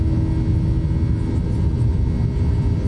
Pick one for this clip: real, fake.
real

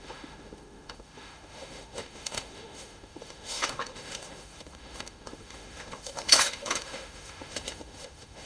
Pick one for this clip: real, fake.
fake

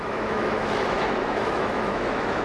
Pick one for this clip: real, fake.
fake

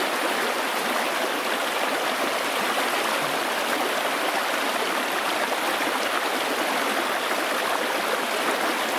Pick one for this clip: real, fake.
real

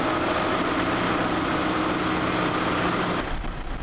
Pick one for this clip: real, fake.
real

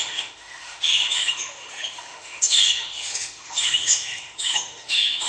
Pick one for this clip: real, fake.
fake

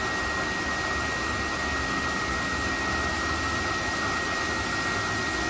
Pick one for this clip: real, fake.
real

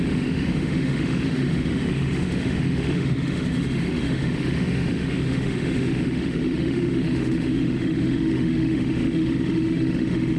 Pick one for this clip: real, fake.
fake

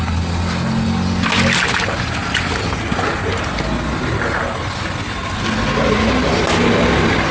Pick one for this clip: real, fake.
real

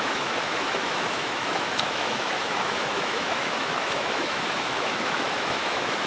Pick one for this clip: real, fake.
fake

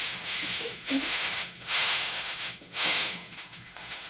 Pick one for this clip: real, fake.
fake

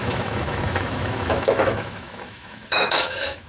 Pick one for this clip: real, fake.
fake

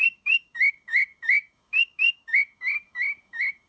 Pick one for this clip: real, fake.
fake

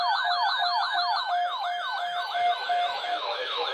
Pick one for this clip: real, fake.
fake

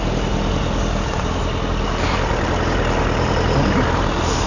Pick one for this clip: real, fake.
real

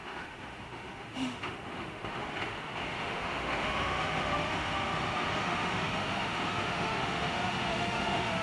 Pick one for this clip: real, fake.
fake